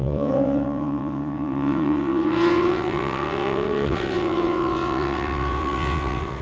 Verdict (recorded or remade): remade